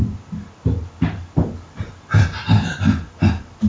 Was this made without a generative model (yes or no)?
yes